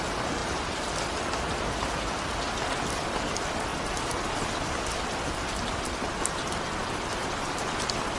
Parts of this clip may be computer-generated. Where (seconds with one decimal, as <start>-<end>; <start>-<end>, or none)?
0.4-1.8; 3.7-6.1